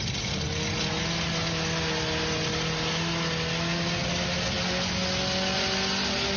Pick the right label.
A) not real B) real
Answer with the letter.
B